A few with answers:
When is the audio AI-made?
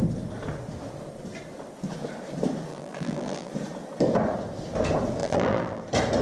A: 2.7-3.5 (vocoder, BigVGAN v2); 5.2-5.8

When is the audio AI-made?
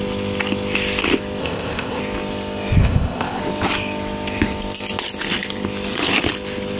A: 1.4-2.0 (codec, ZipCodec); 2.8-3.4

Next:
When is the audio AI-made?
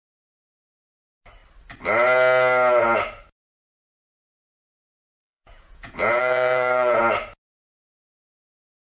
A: 4.3-7.0 (vocoder, Vocos)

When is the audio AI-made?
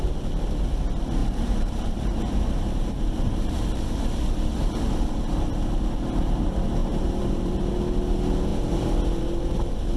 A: 1.2-4.8 (vocoder, BigVGAN v2); 6.8-7.7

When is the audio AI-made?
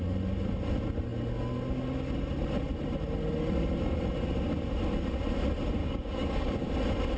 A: 5.8-6.7 (codec, DAC)